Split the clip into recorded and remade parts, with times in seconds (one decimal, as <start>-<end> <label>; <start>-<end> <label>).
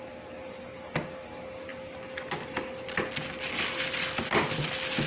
0.0-5.1 recorded